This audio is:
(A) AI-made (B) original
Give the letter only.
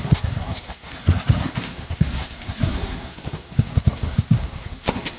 A